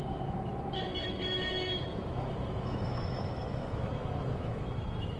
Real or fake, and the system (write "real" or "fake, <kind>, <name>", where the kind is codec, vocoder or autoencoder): fake, autoencoder, DAC-VAE